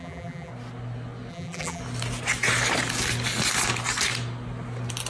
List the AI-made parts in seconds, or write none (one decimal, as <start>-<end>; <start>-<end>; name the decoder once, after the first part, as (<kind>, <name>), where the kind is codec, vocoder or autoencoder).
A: 0.0-0.5 (vocoder, BigVGAN v2); 1.3-1.8